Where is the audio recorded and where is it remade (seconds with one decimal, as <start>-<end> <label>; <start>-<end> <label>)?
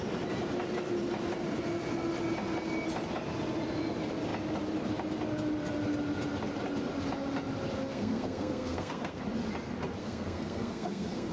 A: 0.0-7.9 recorded; 7.9-9.2 remade; 9.2-10.0 recorded; 10.0-11.3 remade